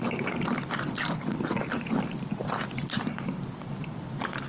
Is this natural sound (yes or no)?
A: no